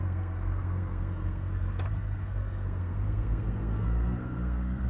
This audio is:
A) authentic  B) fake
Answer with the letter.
B